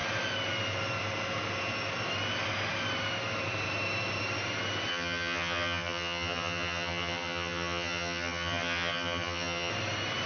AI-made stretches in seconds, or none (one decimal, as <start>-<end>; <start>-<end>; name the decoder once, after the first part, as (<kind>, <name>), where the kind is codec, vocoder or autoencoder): 4.9-9.7 (vocoder, HiFi-GAN)